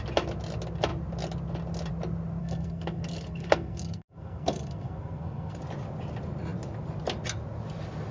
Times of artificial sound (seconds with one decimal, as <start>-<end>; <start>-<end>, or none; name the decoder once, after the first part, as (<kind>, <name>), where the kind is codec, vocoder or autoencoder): 2.4-5.6 (codec, SNAC)